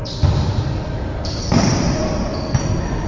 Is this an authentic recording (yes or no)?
yes